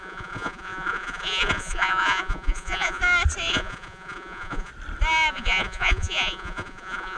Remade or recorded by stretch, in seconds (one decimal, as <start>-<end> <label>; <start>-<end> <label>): 0.0-3.0 remade; 3.0-3.5 recorded; 3.5-4.7 remade; 4.7-5.3 recorded; 5.3-7.2 remade